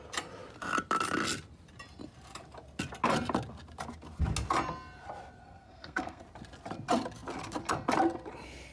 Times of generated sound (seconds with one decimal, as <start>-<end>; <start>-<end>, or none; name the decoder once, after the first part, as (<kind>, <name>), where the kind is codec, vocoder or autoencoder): 5.4-6.2 (codec, SNAC)